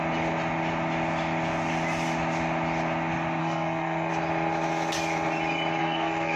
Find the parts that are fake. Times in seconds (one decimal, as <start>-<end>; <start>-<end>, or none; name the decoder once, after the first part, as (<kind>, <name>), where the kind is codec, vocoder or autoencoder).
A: 3.4-4.1 (codec, SNAC); 5.8-6.4

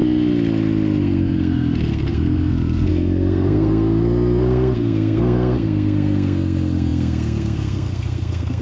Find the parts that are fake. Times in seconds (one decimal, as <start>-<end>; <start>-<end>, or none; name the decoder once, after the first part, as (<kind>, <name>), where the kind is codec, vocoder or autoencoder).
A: 1.0-8.6 (codec, SNAC)

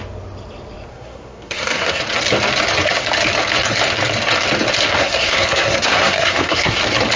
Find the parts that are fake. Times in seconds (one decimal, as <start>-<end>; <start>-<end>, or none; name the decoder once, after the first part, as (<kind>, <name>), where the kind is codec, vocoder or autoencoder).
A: 0.9-2.0 (codec, SNAC); 5.0-6.8

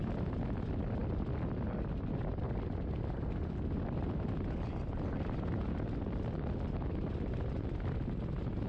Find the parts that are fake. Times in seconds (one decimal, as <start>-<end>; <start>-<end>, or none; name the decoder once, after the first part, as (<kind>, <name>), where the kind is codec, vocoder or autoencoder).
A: none